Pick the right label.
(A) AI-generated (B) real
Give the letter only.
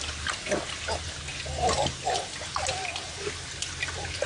B